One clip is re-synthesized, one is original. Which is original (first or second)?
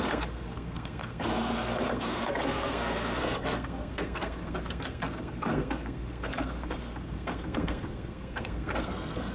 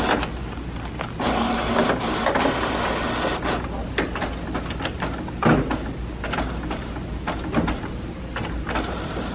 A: second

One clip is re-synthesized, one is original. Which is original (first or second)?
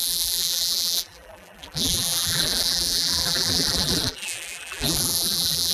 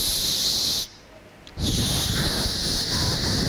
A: second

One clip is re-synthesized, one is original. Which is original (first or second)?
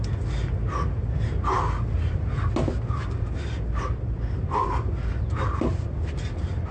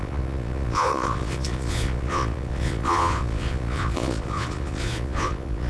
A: first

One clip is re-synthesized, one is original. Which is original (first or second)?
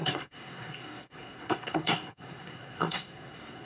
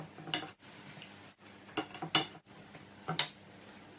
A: second